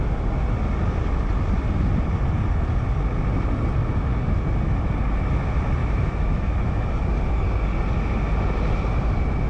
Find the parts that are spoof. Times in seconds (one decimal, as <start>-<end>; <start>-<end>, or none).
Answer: 5.8-7.0